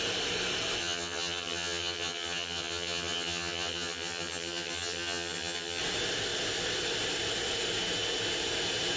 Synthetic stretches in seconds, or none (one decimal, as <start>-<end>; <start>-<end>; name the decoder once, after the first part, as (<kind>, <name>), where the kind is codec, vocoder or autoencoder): 0.8-5.8 (vocoder, HiFi-GAN)